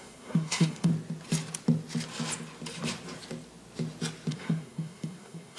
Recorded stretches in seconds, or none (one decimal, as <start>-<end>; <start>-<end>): 0.9-4.3